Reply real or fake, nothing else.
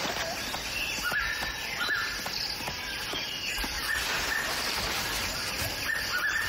real